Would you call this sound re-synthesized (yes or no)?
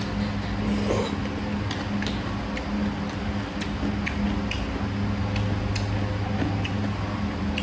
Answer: no